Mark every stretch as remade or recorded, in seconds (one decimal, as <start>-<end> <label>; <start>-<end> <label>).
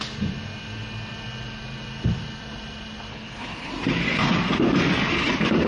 0.0-3.1 recorded; 3.1-3.7 remade; 3.7-5.7 recorded